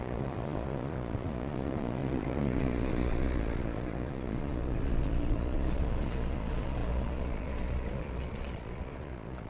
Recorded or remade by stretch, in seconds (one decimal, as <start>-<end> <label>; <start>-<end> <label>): 0.0-9.5 remade